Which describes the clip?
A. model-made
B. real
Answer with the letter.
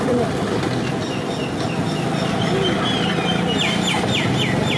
B